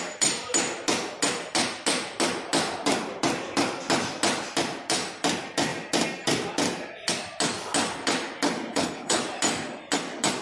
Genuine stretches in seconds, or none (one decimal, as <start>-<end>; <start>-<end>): 0.0-8.7; 9.2-10.4